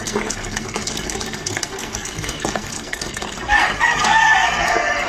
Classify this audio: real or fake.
fake